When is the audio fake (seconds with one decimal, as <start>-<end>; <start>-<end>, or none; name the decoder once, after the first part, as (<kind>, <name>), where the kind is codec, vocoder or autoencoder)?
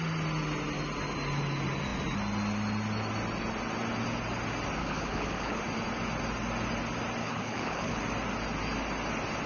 4.8-5.6 (codec, HILCodec); 7.2-8.0